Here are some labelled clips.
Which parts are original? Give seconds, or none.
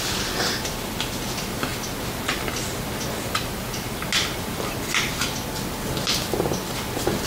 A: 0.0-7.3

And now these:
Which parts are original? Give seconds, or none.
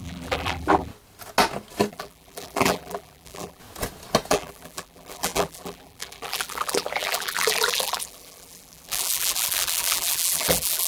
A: 0.9-1.9; 3.6-4.3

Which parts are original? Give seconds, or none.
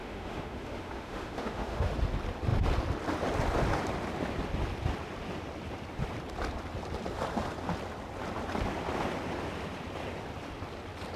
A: 1.9-11.2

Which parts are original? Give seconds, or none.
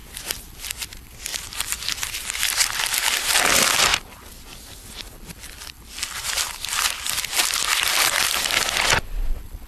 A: 0.0-0.7; 3.0-3.5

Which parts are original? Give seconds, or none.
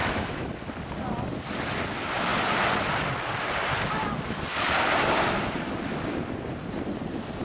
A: 0.5-7.4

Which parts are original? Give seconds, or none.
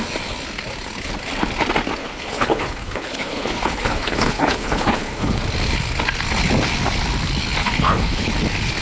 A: 0.0-2.0; 5.4-7.6; 8.3-8.8